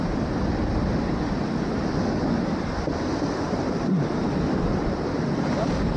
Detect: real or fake real